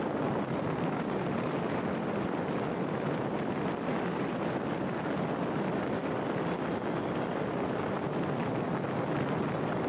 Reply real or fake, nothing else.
real